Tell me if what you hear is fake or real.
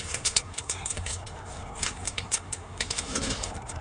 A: fake